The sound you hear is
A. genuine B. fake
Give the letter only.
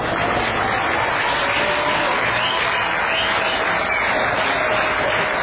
A